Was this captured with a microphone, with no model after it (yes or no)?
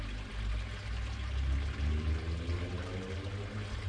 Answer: yes